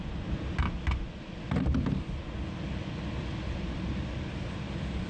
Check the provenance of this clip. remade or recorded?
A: recorded